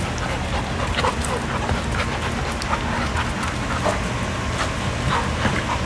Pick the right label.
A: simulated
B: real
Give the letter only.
B